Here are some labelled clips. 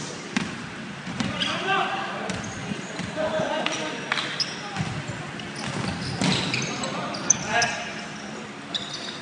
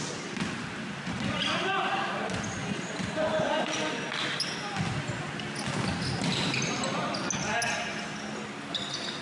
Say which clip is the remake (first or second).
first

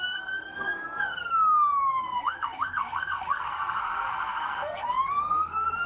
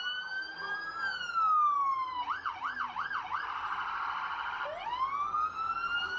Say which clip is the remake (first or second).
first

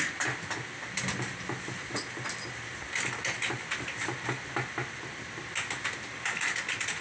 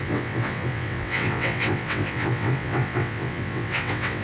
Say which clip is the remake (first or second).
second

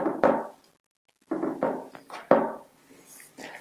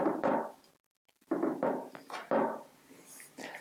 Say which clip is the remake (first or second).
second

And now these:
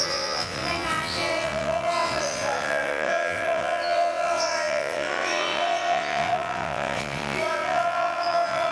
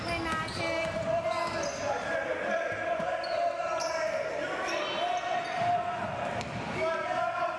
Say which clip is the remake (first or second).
first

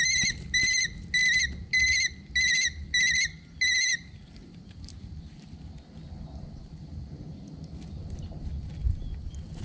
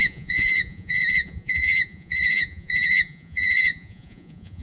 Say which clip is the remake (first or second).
second